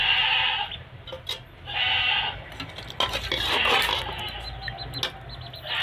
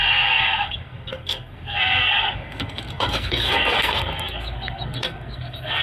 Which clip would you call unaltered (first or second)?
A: first